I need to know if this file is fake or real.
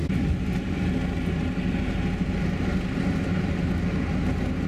real